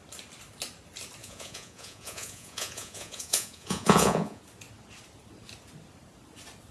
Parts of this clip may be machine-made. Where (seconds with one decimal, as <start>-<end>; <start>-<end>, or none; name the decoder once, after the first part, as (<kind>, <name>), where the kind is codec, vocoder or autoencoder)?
1.2-4.4 (vocoder, Vocos)

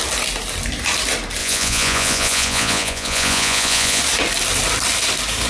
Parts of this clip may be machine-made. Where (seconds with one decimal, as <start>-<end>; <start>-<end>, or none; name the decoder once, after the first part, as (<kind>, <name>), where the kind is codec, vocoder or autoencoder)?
1.4-4.0 (vocoder, Vocos)

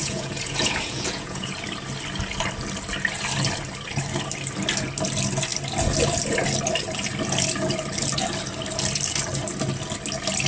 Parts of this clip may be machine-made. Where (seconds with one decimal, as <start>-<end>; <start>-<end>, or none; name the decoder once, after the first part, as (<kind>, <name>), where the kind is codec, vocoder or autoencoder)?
0.0-1.5 (vocoder, Vocos)

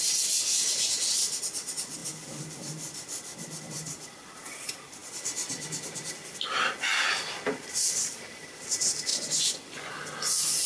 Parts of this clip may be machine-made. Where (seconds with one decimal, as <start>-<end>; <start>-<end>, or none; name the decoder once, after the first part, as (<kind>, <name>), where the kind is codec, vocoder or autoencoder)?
9.1-9.9 (vocoder, Vocos)

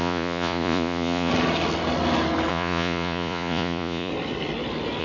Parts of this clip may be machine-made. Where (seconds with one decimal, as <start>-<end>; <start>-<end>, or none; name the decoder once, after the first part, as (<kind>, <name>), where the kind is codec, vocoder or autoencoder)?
0.0-1.3 (vocoder, Vocos); 2.5-4.1

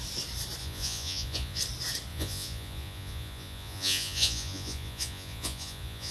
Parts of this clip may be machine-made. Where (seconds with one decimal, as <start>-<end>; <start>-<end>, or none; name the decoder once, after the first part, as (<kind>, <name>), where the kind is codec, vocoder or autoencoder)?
0.6-1.6 (vocoder, Vocos); 2.1-6.1